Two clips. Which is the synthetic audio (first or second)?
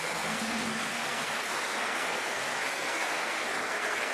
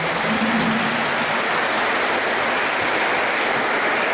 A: first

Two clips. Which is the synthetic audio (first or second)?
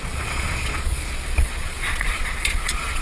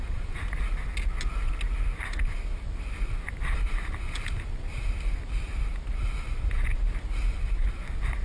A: first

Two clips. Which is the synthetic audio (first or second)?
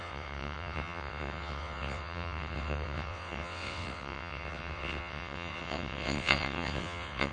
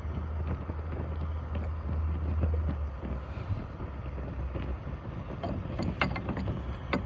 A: first